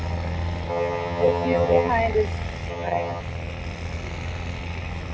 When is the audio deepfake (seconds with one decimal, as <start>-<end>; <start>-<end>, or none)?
0.7-1.9; 2.7-3.2